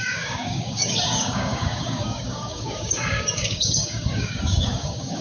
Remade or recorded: remade